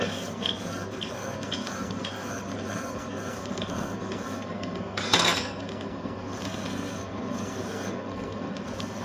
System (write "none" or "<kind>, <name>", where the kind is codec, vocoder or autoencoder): codec, SNAC